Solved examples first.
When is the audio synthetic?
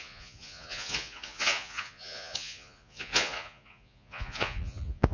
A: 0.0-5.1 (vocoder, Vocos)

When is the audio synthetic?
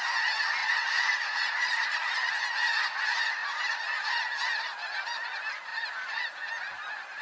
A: 0.6-2.3 (vocoder, Vocos)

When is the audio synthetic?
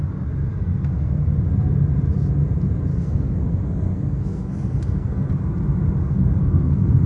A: 0.5-1.2 (codec, SNAC); 2.9-5.3; 6.0-7.1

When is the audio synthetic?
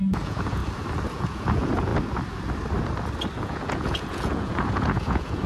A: 0.0-0.6 (vocoder, Vocos); 1.1-1.9; 3.4-5.5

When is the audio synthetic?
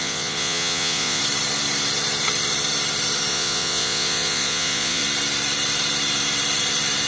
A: 0.0-1.2 (vocoder, Vocos); 3.3-5.0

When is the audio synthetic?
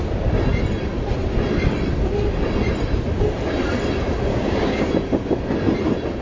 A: 4.3-4.9 (codec, DAC)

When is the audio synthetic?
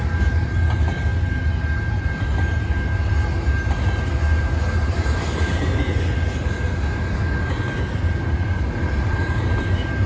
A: none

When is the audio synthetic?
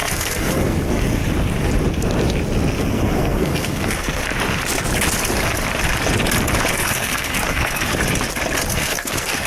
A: 0.0-1.2 (codec, SNAC); 2.8-4.2; 6.7-7.9; 8.7-9.5